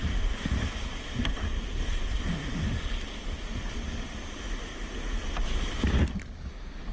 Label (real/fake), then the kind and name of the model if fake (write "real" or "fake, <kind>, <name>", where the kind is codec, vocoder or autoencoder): real